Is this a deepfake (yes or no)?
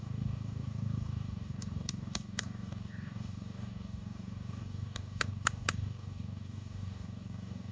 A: yes